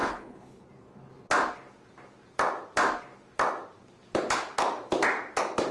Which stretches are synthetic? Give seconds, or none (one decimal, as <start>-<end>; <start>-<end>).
0.0-0.7